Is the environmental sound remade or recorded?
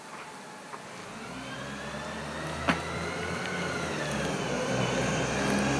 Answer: recorded